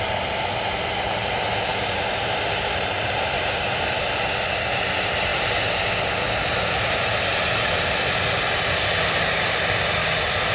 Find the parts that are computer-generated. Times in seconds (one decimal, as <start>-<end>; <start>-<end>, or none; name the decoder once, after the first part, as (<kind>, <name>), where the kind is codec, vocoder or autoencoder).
1.7-4.2 (vocoder, BigVGAN v2); 5.3-5.9